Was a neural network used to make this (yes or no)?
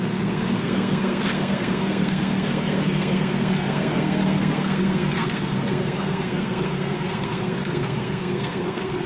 yes